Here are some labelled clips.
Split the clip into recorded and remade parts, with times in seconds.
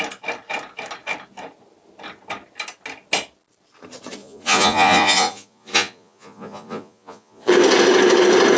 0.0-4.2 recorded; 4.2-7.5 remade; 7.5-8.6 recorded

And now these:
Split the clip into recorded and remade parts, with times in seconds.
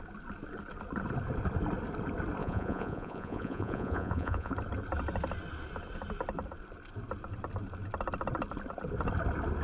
0.0-2.4 recorded; 2.4-4.5 remade; 4.5-9.6 recorded